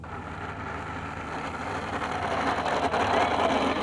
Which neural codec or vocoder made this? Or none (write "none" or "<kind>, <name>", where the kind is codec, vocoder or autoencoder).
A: none